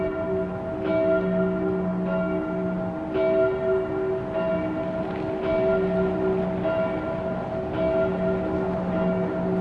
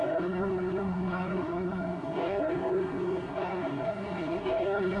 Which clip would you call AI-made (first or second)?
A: second